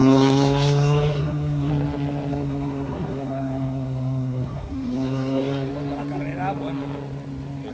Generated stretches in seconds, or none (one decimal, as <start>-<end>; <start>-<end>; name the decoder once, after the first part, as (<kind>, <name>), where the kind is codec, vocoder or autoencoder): 0.0-1.7 (codec, SNAC); 2.3-5.7